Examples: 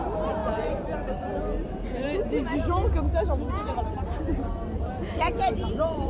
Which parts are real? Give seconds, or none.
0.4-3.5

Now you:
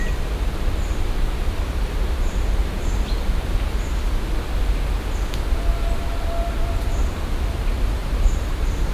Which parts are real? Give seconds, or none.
2.6-6.0

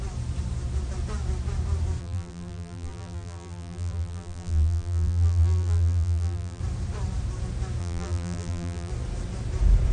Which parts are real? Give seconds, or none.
0.0-2.0; 6.6-7.8; 8.9-9.9

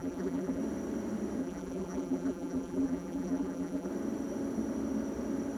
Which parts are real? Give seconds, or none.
0.6-1.4; 3.9-5.6

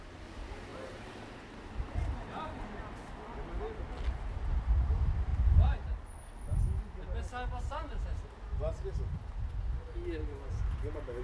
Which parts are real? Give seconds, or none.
0.0-0.7; 2.6-5.3; 6.1-11.2

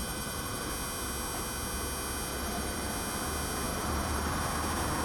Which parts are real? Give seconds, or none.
0.7-2.3; 2.9-3.7; 4.4-5.0

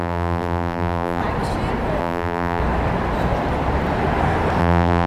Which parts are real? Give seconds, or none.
1.2-2.0; 2.6-4.6